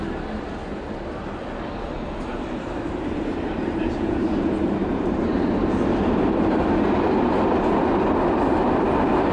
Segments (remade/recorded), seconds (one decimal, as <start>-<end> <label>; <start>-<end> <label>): 0.0-2.3 recorded; 2.3-7.4 remade; 7.4-9.3 recorded